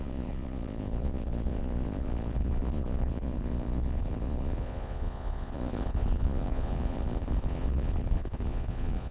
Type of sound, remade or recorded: remade